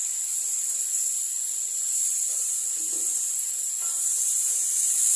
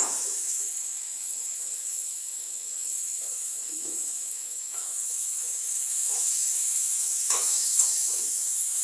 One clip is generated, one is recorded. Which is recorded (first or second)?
first